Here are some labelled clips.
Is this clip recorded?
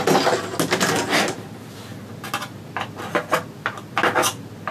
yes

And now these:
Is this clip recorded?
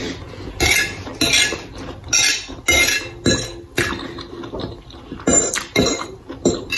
yes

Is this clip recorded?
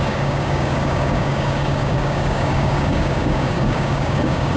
no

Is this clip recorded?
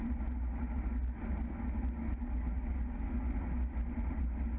yes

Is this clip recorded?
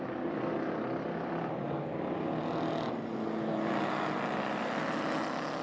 yes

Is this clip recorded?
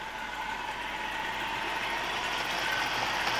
yes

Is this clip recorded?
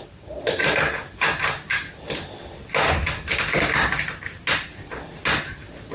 yes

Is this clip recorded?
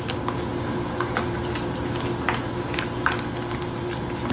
yes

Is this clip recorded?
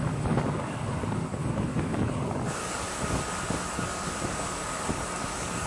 no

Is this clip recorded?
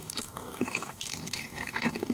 no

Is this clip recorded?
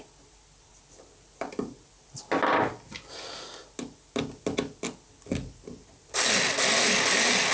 yes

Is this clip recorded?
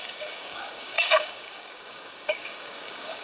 no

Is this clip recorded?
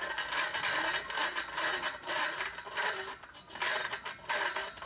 yes